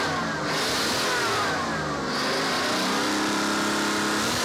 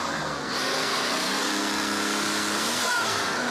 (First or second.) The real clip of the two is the first